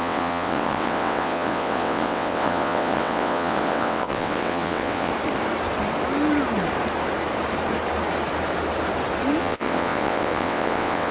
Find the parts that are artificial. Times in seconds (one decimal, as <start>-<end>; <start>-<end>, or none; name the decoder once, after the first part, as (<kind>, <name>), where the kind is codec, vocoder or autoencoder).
0.0-5.1 (vocoder, WaveNeXt); 9.4-11.1